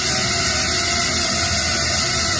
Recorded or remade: recorded